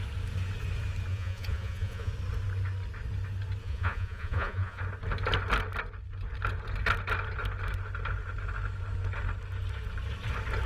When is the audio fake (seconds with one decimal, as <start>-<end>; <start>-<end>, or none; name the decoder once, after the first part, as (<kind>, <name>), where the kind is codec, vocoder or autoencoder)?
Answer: 1.1-2.1 (vocoder, Vocos); 3.6-4.8